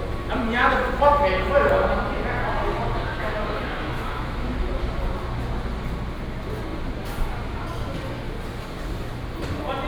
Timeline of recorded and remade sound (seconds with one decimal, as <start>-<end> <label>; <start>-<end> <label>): 0.0-3.1 recorded; 3.1-4.5 remade; 4.5-9.9 recorded